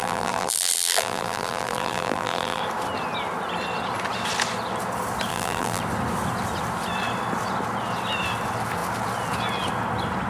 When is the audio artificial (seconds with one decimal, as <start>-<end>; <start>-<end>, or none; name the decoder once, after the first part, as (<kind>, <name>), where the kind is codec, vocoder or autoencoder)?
0.0-2.6 (vocoder, BigVGAN v2); 5.3-5.8